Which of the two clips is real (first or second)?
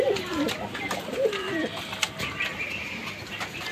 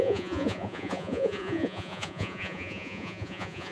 first